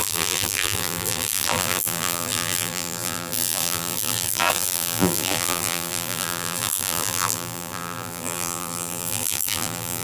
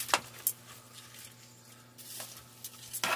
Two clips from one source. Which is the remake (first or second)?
first